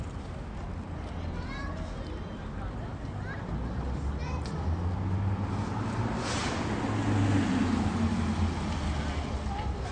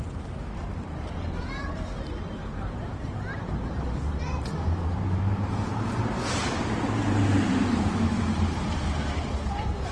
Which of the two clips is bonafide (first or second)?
first